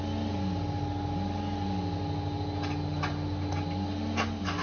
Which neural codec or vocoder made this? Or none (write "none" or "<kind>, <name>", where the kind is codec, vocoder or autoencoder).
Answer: none